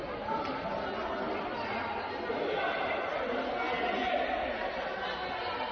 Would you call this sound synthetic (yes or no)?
no